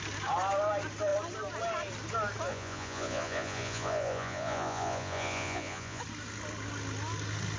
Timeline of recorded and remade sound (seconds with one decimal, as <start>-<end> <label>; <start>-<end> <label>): 0.0-2.5 recorded; 2.5-6.0 remade; 6.0-7.6 recorded